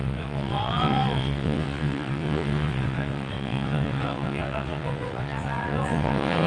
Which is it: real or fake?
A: fake